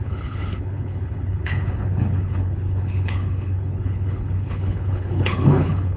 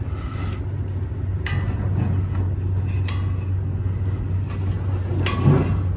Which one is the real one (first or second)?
second